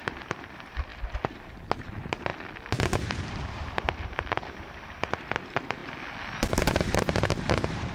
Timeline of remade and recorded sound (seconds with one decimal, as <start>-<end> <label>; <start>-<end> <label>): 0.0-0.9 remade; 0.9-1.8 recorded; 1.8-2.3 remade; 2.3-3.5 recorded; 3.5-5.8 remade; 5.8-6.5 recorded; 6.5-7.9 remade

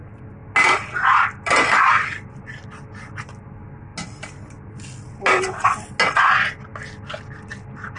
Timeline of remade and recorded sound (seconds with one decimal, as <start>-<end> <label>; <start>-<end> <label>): 0.0-8.0 recorded

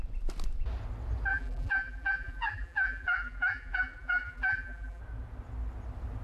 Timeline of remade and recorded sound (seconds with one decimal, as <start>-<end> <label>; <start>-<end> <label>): 0.0-1.3 recorded; 1.3-5.0 remade; 5.0-6.2 recorded

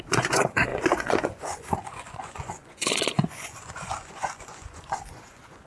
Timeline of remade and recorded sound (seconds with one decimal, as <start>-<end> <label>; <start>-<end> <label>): 0.0-5.7 remade

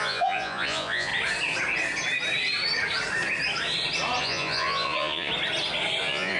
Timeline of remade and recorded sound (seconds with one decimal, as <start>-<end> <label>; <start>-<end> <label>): 0.0-1.1 remade; 1.1-4.2 recorded; 4.2-5.3 remade; 5.3-6.0 recorded; 6.0-6.4 remade

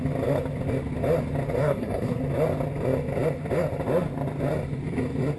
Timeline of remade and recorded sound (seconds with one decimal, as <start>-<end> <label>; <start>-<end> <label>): 0.0-1.6 recorded; 1.6-2.2 remade; 2.2-5.4 recorded